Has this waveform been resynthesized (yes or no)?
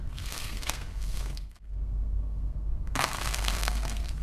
yes